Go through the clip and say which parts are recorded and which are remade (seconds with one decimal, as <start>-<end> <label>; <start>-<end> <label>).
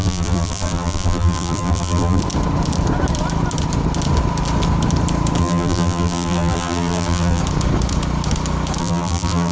0.0-2.2 remade; 2.2-5.4 recorded; 5.4-7.4 remade; 7.4-8.8 recorded; 8.8-9.5 remade